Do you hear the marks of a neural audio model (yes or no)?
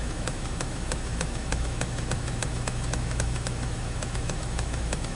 yes